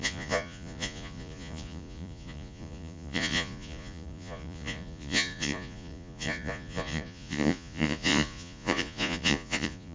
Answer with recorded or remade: remade